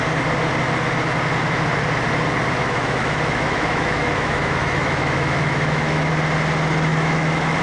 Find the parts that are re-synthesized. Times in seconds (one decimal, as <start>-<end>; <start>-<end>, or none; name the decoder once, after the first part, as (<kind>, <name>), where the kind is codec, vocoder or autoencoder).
2.6-6.1 (autoencoder, DAC-VAE); 6.9-7.6